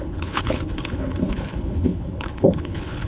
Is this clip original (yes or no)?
no